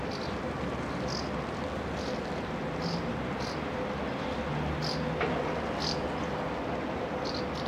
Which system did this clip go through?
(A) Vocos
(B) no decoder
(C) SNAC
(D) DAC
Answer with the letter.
B